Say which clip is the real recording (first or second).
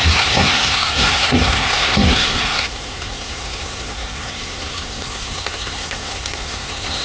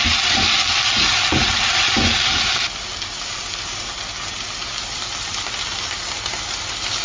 second